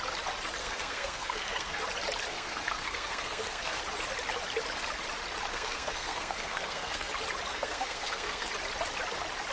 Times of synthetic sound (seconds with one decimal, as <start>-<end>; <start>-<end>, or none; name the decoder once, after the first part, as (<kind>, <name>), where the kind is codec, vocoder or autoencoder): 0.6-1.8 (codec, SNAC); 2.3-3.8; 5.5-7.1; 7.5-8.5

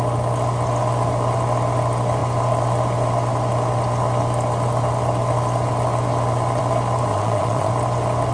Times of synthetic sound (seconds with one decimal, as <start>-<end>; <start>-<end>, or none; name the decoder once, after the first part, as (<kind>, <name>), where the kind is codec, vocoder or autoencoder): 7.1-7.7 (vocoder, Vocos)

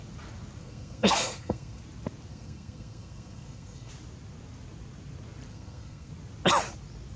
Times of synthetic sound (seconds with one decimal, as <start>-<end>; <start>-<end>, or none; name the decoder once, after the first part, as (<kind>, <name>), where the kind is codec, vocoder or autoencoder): 0.6-1.8 (codec, SNAC); 2.3-3.9; 5.5-6.1